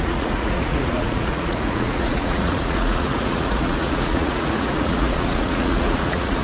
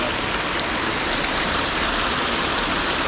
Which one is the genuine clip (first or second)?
second